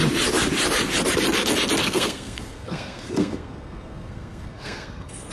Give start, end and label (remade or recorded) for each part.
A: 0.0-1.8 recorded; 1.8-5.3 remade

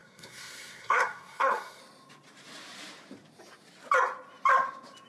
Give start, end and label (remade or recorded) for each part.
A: 0.0-1.8 remade; 1.8-5.1 recorded

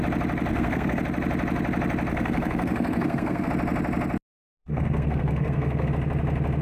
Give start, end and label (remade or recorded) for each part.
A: 0.0-0.5 recorded; 0.5-1.0 remade; 1.0-2.1 recorded; 2.1-3.5 remade; 3.5-4.6 recorded; 4.6-5.9 remade; 5.9-6.6 recorded

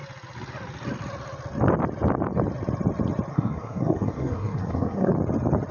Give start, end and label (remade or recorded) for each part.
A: 0.0-3.3 recorded; 3.3-5.1 remade; 5.1-5.7 recorded